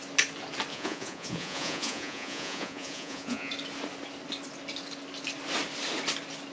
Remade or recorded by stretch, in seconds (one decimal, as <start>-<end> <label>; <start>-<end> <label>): 0.0-0.7 recorded; 0.7-3.5 remade; 3.5-6.5 recorded